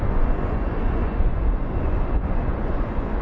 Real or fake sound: fake